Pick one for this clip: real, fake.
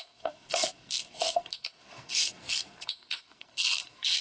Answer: fake